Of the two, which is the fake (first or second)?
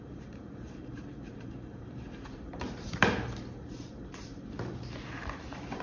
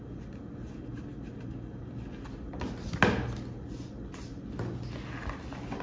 first